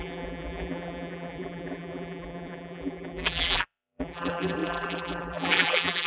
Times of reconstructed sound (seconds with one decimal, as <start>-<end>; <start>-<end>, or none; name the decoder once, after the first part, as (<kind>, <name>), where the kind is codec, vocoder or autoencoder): 0.0-6.1 (vocoder, BigVGAN v2)